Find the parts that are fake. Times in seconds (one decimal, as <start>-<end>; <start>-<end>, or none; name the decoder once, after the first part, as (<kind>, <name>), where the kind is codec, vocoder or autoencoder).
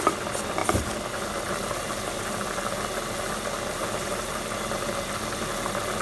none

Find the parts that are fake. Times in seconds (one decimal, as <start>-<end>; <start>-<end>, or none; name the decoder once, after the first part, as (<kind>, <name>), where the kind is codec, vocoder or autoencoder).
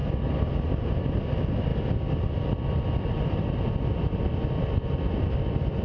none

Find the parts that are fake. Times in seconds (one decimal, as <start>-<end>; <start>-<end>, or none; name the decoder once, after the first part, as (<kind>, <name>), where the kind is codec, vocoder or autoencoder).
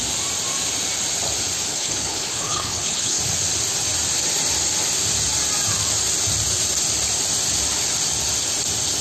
1.7-3.2 (codec, HILCodec)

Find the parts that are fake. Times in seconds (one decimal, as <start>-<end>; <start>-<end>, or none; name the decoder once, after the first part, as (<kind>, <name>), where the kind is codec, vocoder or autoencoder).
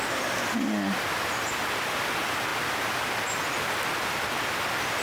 none